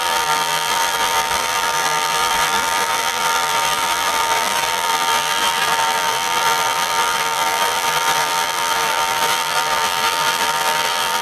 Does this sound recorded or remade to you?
remade